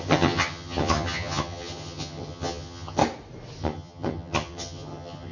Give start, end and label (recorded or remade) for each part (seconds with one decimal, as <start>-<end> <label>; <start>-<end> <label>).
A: 0.0-3.0 remade; 3.0-3.6 recorded; 3.6-5.3 remade